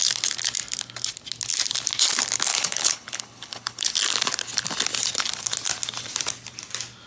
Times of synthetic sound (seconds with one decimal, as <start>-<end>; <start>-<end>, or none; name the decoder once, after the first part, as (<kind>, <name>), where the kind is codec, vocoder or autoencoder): 2.5-3.9 (codec, HILCodec)